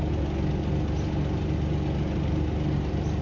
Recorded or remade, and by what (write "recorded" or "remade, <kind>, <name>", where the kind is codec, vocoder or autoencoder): recorded